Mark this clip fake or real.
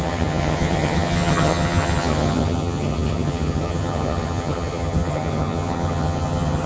fake